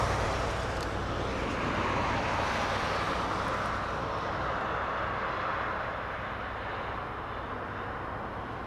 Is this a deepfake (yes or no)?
no